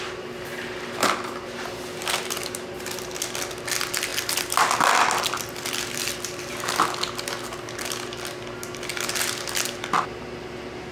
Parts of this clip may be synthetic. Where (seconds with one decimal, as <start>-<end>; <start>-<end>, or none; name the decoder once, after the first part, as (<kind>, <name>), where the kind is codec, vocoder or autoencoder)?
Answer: none